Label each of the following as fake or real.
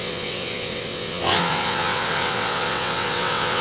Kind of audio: fake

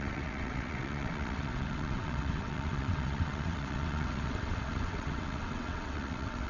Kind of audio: fake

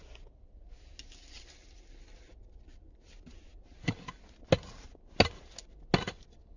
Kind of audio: real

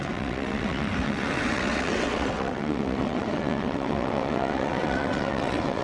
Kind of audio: fake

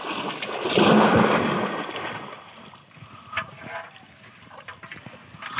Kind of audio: real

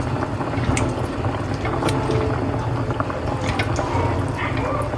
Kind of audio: real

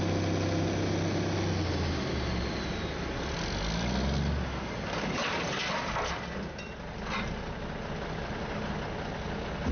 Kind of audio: real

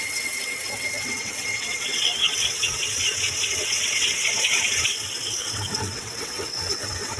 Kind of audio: fake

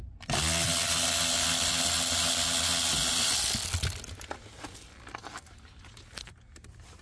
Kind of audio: real